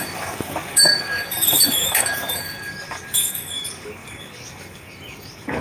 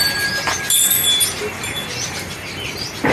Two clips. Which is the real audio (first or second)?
second